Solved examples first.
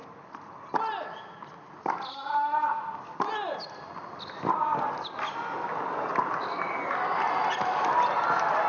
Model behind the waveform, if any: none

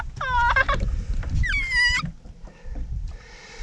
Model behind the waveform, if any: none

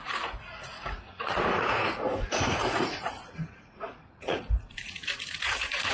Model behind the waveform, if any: vocoder, Vocos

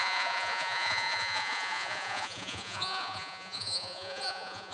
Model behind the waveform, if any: vocoder, Vocos